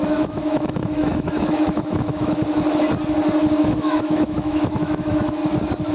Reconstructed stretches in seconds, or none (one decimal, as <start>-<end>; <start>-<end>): 0.0-2.4; 3.6-5.4